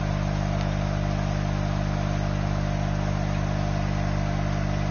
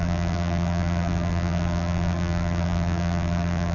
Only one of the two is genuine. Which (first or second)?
first